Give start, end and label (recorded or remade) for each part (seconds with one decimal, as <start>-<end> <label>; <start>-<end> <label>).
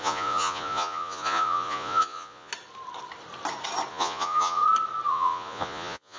0.0-2.5 remade; 2.5-3.9 recorded; 3.9-4.6 remade; 4.6-5.1 recorded; 5.1-6.2 remade